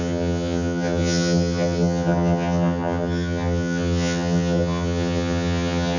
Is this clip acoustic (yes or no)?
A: no